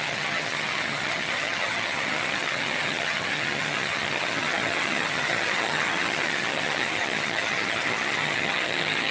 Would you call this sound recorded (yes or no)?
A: no